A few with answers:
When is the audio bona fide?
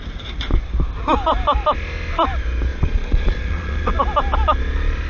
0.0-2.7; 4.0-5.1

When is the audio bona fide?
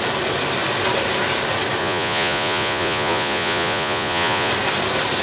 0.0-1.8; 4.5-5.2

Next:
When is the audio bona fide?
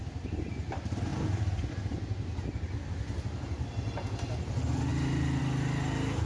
0.0-6.3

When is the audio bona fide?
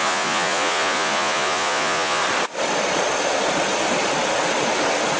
2.2-5.2